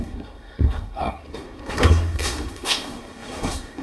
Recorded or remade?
remade